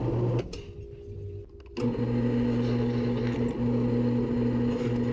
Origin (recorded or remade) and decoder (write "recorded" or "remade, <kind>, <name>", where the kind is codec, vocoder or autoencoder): recorded